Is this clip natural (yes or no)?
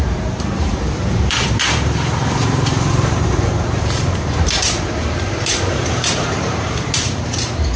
no